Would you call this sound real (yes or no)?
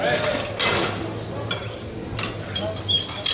yes